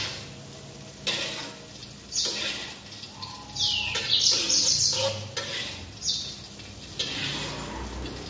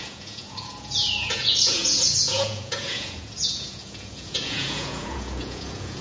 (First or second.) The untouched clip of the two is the first